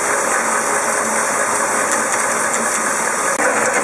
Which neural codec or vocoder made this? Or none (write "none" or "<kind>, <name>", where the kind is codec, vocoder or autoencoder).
none